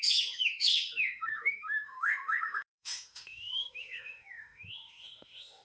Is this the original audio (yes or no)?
no